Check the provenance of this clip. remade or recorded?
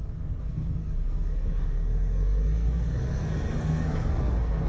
remade